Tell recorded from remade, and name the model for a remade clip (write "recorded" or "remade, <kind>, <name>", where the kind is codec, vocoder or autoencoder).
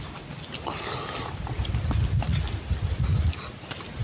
recorded